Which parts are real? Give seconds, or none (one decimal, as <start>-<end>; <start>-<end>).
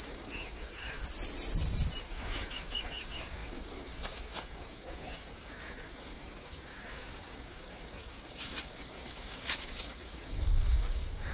1.0-2.0